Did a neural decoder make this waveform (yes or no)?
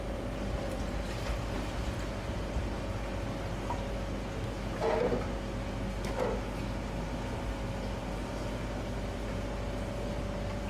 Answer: no